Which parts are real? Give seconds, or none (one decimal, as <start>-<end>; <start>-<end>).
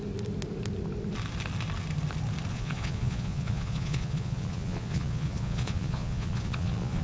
0.0-2.5